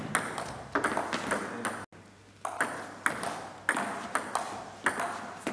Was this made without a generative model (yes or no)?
yes